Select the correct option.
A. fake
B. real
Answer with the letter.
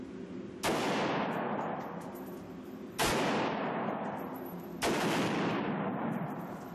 B